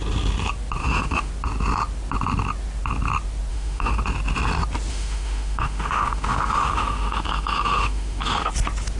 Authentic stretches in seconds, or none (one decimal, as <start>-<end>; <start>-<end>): 0.0-0.8; 1.3-3.5; 4.0-4.9; 8.5-9.0